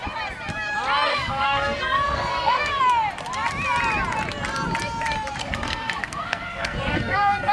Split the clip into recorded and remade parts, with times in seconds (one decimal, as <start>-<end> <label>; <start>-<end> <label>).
0.0-1.1 recorded; 1.1-2.8 remade; 2.8-5.4 recorded; 5.4-7.5 remade